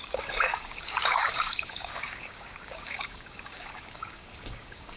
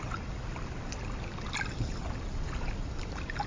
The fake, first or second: first